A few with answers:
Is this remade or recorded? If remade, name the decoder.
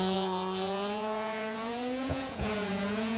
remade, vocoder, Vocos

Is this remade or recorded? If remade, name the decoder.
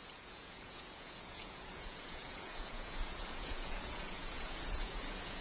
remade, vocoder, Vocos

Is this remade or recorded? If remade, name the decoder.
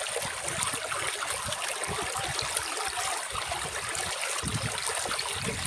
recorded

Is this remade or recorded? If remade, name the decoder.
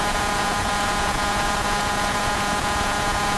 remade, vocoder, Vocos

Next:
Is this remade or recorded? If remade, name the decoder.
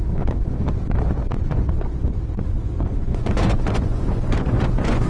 remade, vocoder, Vocos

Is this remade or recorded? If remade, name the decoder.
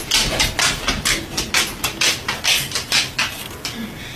recorded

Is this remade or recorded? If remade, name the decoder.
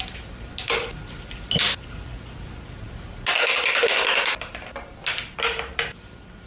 recorded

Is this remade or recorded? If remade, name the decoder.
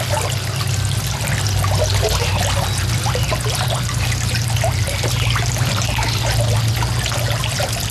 recorded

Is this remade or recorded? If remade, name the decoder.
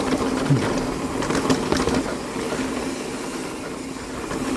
recorded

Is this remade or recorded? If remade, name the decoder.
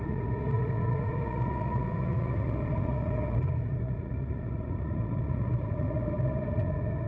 remade, vocoder, Vocos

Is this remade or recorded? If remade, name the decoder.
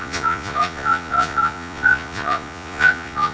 remade, vocoder, Vocos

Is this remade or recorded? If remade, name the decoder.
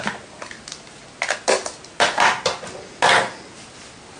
recorded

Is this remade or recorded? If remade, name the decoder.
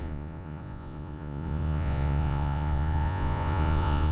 remade, vocoder, Vocos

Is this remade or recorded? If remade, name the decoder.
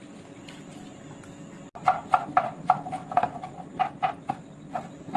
recorded